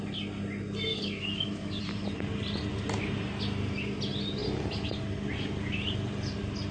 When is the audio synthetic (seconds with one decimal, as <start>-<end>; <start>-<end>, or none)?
0.9-1.8

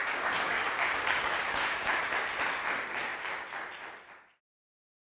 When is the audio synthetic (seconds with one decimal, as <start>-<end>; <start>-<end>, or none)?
0.0-2.0

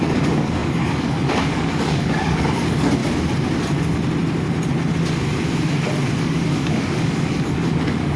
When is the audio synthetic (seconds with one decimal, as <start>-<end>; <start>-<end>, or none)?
0.0-3.0; 6.2-8.2

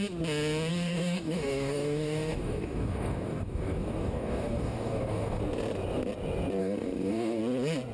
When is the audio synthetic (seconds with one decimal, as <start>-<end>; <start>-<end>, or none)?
0.7-5.4; 6.6-7.4